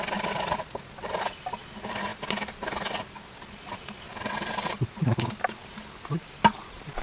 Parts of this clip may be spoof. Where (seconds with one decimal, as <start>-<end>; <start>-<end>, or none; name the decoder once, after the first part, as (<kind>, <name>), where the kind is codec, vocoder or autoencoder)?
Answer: none